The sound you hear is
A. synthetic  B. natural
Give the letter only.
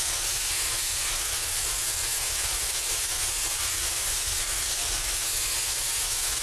A